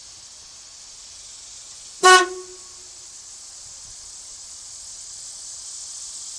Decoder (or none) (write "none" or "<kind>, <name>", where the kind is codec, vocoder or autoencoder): none